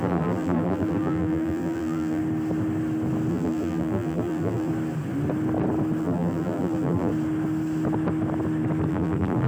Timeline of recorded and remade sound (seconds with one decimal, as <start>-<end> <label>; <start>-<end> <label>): 0.0-2.2 remade; 2.2-3.3 recorded; 3.3-4.7 remade; 4.7-6.0 recorded; 6.0-7.1 remade; 7.1-8.9 recorded; 8.9-9.5 remade

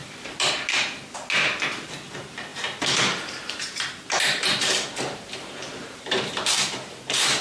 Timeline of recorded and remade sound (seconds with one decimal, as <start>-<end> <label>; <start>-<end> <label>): 0.0-1.8 recorded; 1.8-7.4 remade

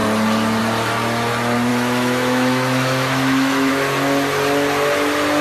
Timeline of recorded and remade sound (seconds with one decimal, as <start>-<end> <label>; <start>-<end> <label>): 0.0-1.7 recorded; 1.7-3.7 remade; 3.7-5.4 recorded

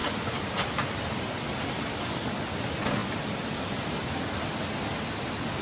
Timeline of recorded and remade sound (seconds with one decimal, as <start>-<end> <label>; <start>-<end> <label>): 0.0-5.6 recorded

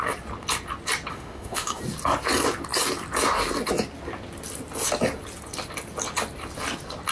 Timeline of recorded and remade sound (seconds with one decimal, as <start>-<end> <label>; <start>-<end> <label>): 0.0-1.1 recorded; 1.1-1.8 remade; 1.8-7.1 recorded

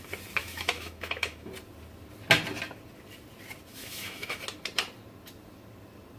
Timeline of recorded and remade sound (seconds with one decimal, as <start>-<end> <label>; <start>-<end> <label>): 0.0-0.4 recorded; 0.4-1.5 remade; 1.5-3.7 recorded; 3.7-4.4 remade; 4.4-6.2 recorded